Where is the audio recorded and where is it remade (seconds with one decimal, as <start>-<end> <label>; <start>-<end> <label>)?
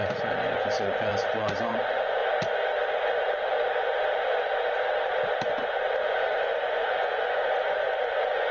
0.0-2.2 remade; 2.2-6.0 recorded; 6.0-8.5 remade